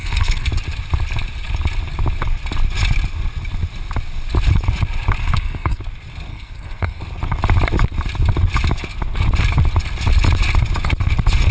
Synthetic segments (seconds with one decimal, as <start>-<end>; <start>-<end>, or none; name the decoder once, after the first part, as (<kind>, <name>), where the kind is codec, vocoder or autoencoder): 0.0-0.5 (codec, SNAC); 5.2-5.8; 6.3-7.0